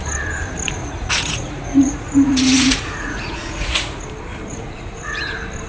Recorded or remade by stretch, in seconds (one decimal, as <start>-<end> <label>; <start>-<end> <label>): 0.0-0.8 recorded; 0.8-4.0 remade; 4.0-4.5 recorded; 4.5-5.3 remade; 5.3-5.7 recorded